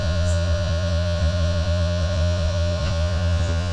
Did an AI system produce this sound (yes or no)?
yes